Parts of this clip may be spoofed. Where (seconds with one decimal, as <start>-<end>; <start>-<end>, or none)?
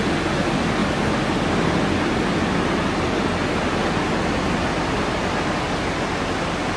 none